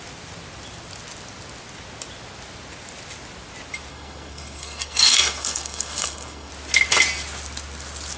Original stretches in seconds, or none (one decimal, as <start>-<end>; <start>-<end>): 0.0-3.9; 6.5-8.2